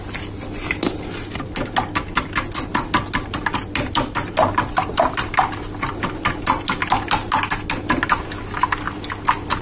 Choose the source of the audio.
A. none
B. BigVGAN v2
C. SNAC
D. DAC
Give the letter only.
A